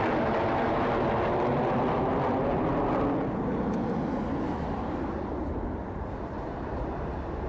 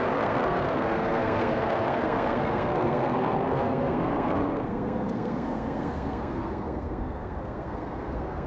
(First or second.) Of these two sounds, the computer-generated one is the second